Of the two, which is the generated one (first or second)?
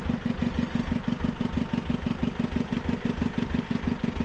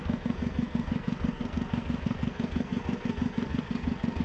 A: second